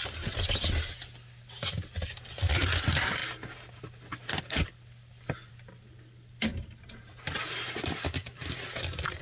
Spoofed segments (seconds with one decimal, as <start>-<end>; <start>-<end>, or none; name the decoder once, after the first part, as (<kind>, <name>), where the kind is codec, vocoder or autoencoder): 6.5-7.1 (vocoder, BigVGAN v2)